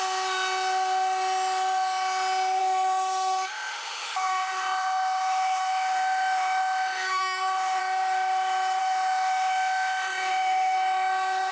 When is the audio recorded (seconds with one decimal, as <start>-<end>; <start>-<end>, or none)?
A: 0.0-2.6; 7.8-8.8